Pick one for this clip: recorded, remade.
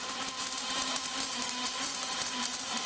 remade